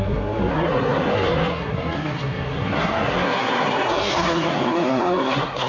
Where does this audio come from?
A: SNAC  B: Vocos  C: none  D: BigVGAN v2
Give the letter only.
A